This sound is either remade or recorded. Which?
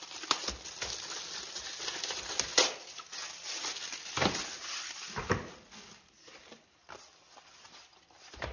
recorded